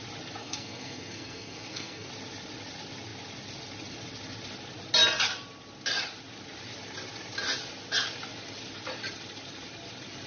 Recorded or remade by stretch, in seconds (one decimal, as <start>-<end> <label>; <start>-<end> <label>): 0.0-0.4 recorded; 0.4-2.1 remade; 2.1-10.3 recorded